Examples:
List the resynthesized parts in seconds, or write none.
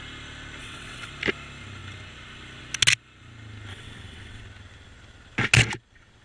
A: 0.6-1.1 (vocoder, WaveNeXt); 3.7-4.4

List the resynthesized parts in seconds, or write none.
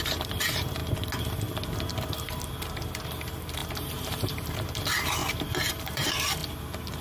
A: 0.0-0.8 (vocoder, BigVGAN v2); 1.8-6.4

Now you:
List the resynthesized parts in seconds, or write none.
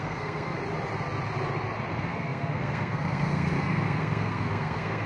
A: 0.0-0.6 (codec, SNAC); 1.9-5.1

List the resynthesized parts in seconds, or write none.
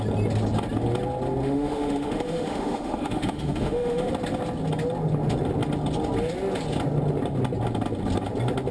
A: 1.4-4.1 (autoencoder, DAC-VAE)